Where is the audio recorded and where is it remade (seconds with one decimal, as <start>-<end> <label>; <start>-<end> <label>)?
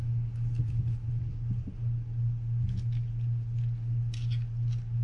0.0-5.0 recorded